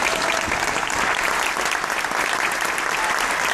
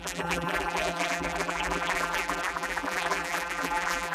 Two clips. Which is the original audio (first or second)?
first